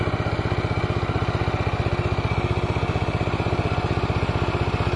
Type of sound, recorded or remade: recorded